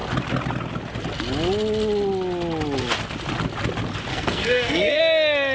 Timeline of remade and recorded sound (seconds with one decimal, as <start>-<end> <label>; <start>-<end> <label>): 0.0-4.1 recorded; 4.1-5.0 remade; 5.0-5.5 recorded